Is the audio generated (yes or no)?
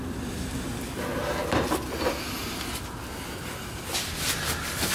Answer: no